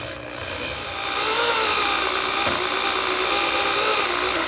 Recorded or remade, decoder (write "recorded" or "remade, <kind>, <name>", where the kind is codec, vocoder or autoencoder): recorded